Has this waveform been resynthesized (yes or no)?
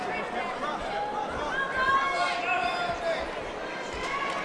no